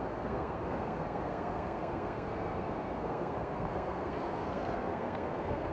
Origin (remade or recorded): remade